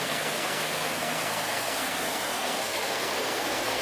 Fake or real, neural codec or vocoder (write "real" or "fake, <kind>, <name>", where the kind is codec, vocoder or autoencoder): fake, codec, SNAC